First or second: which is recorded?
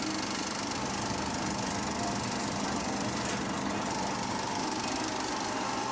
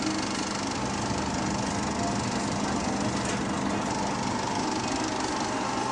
second